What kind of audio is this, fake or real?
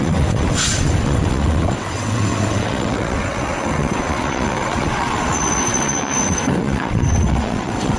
fake